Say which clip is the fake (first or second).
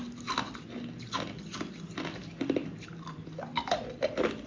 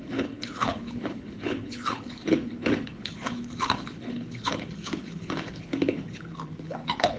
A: second